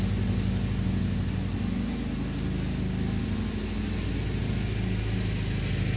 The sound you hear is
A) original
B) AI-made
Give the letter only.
A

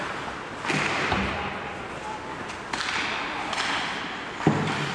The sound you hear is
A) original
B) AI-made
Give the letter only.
A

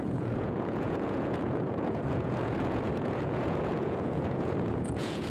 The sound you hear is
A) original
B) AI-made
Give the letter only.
B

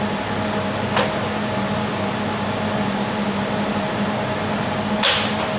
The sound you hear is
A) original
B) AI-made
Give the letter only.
A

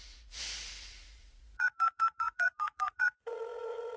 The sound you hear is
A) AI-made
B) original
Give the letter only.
A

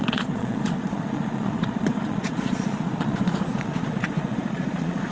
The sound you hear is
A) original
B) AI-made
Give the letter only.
B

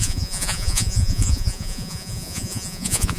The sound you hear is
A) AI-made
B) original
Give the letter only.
A